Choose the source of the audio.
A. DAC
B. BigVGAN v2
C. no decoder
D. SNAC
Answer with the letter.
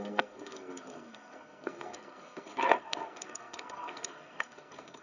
D